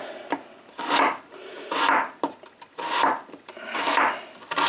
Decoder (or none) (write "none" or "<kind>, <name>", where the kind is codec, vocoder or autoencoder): none